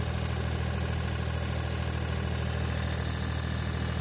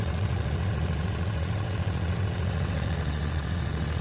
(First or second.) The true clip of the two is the first